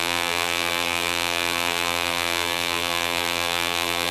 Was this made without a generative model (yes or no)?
no